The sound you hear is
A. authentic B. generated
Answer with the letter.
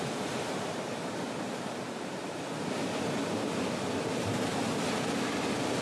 A